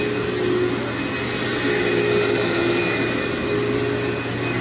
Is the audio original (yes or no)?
yes